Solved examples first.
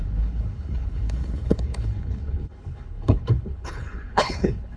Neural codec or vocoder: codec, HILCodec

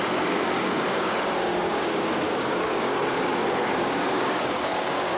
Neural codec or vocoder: codec, DAC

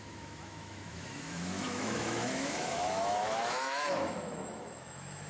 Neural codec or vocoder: autoencoder, DAC-VAE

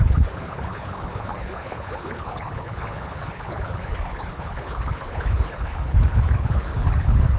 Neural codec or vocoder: codec, HILCodec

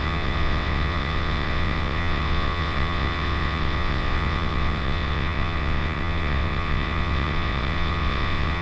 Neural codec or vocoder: vocoder, WaveNeXt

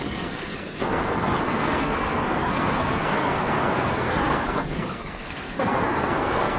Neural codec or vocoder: codec, SNAC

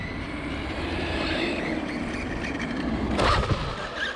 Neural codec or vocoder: vocoder, BigVGAN v2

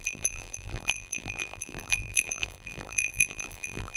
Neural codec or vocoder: vocoder, BigVGAN v2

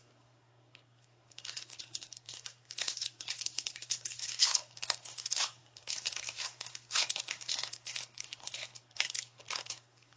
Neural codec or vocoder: codec, SNAC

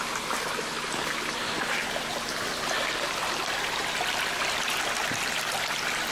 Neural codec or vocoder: none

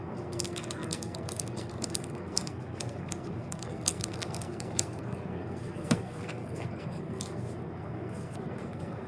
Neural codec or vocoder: codec, SNAC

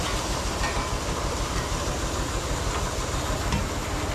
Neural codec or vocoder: none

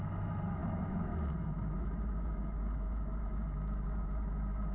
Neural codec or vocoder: autoencoder, DAC-VAE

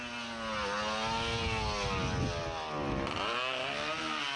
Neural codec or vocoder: none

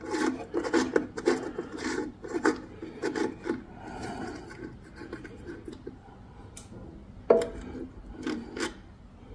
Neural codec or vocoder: none